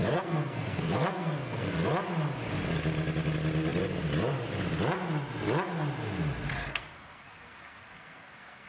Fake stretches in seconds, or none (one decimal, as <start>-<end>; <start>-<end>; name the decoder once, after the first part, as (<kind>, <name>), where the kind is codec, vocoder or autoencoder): 0.0-1.9 (codec, SNAC); 6.6-8.7